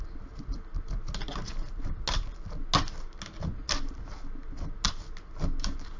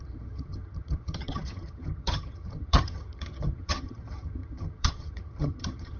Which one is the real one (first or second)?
first